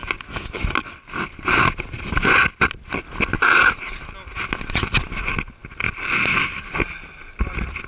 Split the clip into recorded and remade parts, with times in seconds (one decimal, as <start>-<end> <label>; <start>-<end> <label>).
0.0-7.9 recorded